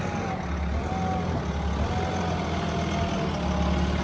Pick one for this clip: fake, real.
real